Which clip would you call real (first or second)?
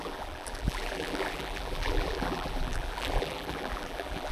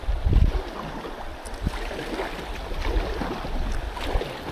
second